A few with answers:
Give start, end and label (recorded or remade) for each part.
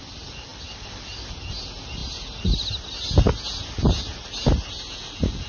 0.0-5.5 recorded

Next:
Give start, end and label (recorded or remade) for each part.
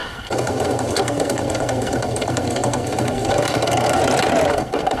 0.0-4.0 remade; 4.0-4.5 recorded; 4.5-5.0 remade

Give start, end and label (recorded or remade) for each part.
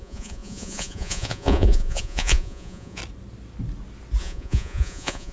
0.0-3.0 remade; 3.0-4.2 recorded; 4.2-5.3 remade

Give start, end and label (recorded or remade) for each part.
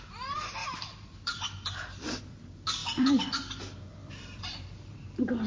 0.0-0.6 recorded; 0.6-2.2 remade; 2.2-2.8 recorded; 2.8-3.6 remade; 3.6-4.0 recorded; 4.0-5.0 remade; 5.0-5.5 recorded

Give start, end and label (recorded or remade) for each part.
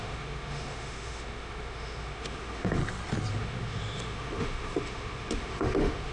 0.0-2.8 remade; 2.8-3.3 recorded; 3.3-6.1 remade